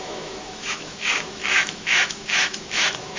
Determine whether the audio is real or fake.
fake